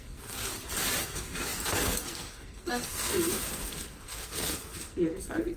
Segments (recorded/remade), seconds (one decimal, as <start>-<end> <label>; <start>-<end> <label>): 0.0-0.5 remade; 0.5-1.0 recorded; 1.0-5.6 remade